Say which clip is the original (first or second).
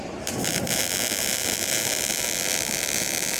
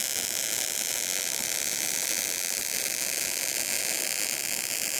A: second